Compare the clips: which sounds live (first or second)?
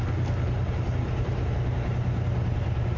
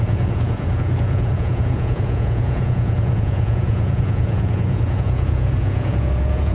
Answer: first